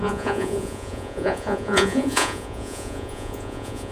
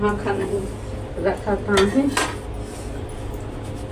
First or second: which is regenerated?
first